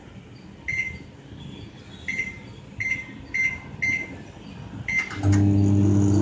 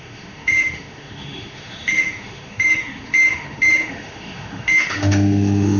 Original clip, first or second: first